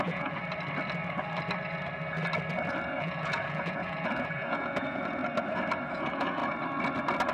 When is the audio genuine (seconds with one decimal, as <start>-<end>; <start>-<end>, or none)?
0.4-3.0; 5.2-5.9; 6.4-7.3